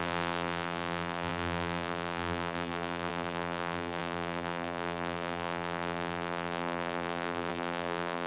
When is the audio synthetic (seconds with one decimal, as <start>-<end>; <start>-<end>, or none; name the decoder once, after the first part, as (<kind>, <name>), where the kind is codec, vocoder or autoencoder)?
0.0-8.3 (vocoder, BigVGAN v2)